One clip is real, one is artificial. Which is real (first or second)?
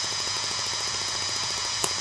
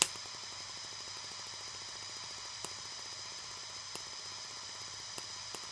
second